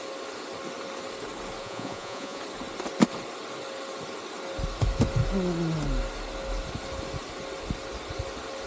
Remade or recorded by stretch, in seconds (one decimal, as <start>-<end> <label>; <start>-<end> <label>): 0.0-1.6 recorded; 1.6-2.4 remade; 2.4-8.7 recorded